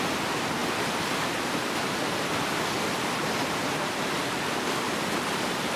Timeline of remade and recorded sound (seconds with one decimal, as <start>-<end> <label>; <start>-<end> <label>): 0.0-5.8 recorded